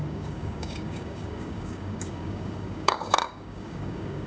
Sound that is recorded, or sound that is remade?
remade